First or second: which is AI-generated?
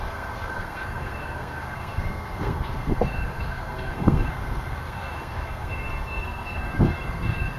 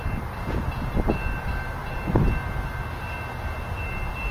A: first